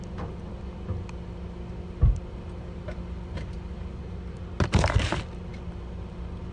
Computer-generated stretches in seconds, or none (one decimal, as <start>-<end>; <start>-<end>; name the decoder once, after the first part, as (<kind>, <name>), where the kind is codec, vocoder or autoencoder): none